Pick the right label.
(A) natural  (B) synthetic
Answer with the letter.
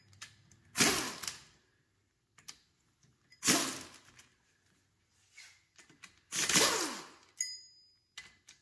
A